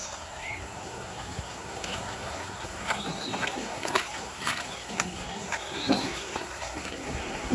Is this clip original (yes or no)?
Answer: no